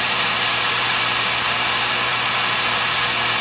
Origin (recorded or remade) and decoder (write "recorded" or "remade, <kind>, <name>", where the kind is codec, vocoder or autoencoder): recorded